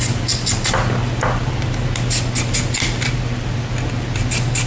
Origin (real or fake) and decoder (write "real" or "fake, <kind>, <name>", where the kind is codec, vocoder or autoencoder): real